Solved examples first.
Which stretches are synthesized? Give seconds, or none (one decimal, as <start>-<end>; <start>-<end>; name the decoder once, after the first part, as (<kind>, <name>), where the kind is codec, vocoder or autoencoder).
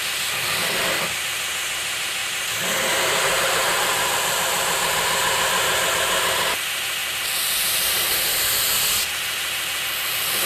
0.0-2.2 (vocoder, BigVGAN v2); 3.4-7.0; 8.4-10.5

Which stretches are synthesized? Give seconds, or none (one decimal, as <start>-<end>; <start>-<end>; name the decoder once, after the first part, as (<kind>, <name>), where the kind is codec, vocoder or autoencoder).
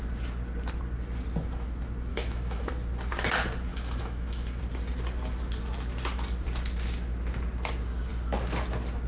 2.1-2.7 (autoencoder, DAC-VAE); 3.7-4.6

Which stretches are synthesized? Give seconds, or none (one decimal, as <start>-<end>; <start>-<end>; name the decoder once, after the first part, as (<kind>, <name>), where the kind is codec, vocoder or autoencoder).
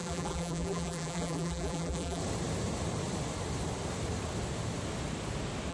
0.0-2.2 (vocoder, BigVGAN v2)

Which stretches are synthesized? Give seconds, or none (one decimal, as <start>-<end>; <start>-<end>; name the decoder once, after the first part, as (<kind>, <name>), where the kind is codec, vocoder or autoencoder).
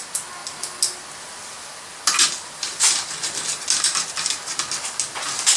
none